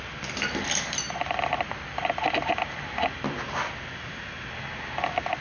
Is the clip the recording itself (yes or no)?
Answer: yes